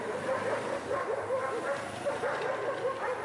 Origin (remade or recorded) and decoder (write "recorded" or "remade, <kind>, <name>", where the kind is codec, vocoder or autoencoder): recorded